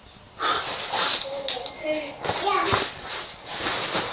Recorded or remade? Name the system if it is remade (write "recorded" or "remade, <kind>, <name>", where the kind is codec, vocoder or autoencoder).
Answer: recorded